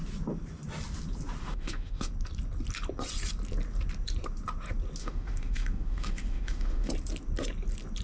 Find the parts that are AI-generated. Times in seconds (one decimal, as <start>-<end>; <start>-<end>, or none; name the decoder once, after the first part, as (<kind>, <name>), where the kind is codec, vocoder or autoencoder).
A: 1.4-2.1 (autoencoder, DAC-VAE); 5.0-6.9